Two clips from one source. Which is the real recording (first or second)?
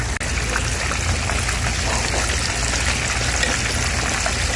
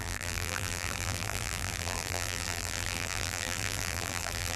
first